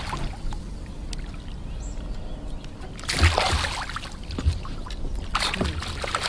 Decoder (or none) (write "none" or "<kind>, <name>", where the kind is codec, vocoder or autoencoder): none